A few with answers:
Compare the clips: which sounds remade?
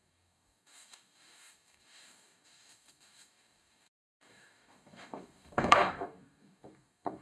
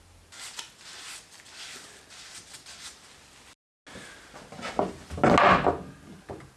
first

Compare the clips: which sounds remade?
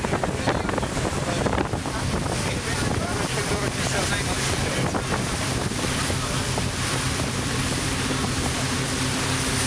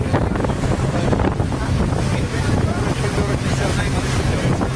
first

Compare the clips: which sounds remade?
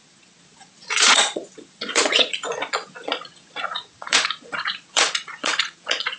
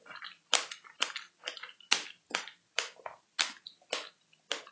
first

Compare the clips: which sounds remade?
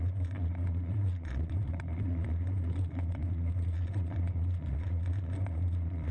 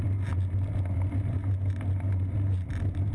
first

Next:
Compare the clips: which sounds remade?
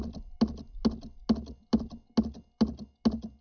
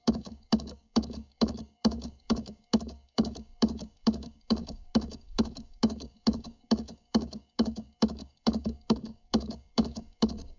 second